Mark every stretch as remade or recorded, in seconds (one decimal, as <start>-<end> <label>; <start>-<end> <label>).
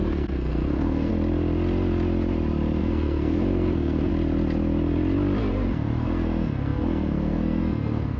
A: 0.0-1.1 remade; 1.1-2.8 recorded; 2.8-4.1 remade; 4.1-5.5 recorded; 5.5-8.2 remade